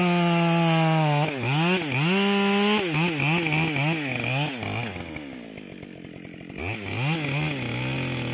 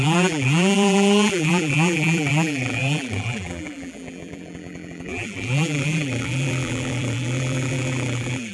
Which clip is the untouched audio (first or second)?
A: first